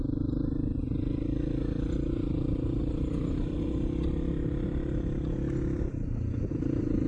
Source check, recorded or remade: recorded